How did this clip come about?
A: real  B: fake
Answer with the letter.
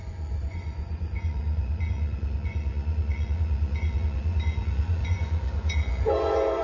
B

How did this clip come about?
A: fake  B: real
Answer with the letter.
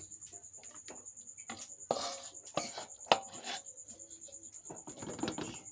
B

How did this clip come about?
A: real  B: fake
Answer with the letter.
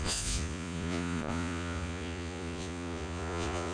B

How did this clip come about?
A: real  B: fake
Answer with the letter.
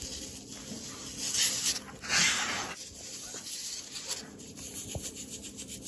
A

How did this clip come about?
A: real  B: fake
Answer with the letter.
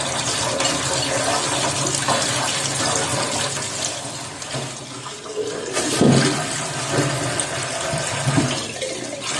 A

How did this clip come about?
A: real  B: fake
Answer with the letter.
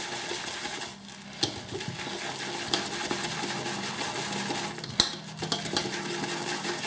A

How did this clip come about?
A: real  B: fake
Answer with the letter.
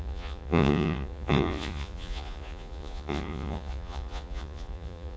B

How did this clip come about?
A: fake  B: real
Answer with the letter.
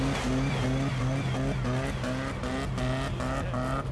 B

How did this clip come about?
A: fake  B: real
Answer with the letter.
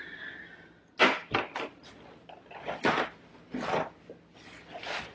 B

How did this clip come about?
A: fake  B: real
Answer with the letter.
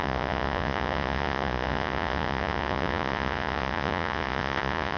A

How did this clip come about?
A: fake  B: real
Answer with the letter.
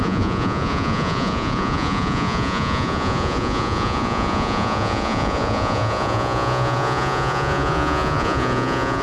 A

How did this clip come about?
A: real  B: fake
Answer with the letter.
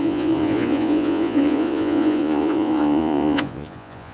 B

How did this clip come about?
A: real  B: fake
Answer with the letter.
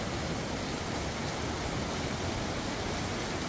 A